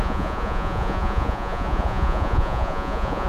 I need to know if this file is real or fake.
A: fake